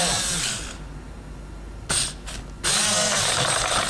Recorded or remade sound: recorded